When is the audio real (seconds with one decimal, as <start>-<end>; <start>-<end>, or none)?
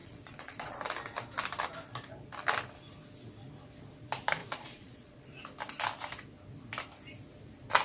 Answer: 0.8-4.4; 5.2-7.8